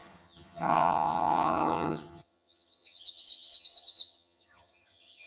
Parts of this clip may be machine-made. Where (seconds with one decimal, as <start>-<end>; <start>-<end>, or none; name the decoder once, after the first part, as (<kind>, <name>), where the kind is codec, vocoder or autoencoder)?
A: 0.0-5.3 (vocoder, HiFi-GAN)